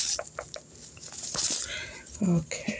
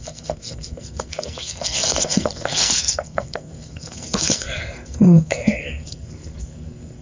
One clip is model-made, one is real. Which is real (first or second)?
first